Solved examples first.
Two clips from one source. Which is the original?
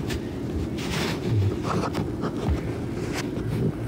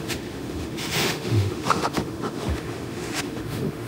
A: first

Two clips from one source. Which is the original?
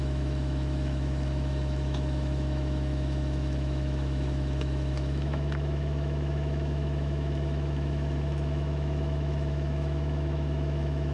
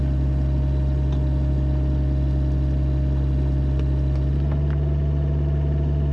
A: second